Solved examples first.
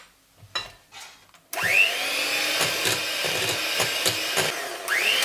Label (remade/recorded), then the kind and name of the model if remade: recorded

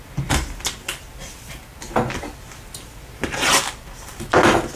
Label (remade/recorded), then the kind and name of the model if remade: recorded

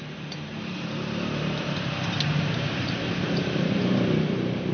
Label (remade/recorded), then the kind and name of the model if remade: remade, vocoder, BigVGAN v2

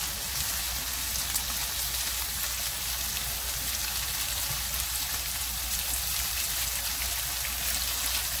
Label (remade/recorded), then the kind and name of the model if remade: recorded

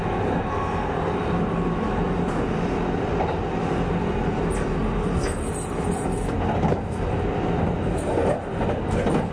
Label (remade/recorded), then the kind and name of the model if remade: recorded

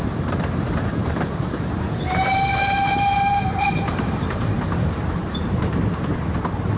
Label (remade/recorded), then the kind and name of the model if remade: remade, vocoder, BigVGAN v2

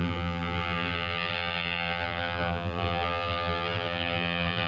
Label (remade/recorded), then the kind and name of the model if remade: remade, vocoder, BigVGAN v2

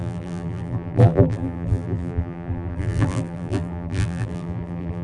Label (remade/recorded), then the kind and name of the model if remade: remade, vocoder, BigVGAN v2